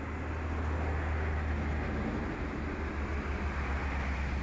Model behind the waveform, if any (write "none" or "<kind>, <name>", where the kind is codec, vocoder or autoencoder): none